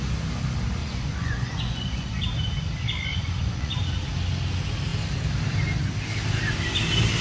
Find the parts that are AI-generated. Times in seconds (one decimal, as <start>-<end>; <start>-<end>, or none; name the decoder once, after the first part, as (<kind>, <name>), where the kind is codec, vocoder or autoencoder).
0.8-2.2 (vocoder, Vocos); 3.1-3.7